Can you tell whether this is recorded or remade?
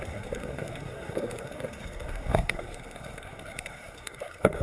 remade